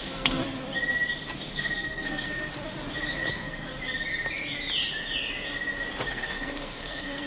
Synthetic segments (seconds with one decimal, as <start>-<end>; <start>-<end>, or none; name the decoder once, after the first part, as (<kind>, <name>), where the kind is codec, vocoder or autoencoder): 0.0-0.4 (codec, SNAC); 1.5-2.5; 3.3-3.7; 6.1-7.3